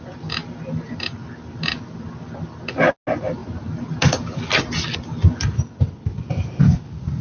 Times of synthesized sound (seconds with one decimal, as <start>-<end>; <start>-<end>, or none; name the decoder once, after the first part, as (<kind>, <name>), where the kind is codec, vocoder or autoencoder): none